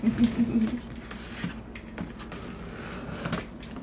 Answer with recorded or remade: recorded